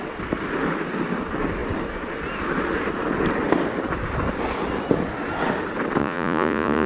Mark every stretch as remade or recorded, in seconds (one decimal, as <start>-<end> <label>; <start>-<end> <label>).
0.0-6.0 recorded; 6.0-6.9 remade